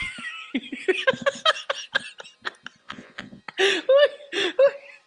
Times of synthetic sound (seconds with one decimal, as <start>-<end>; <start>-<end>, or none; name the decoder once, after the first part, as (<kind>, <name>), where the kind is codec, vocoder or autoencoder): 2.8-3.4 (vocoder, Vocos)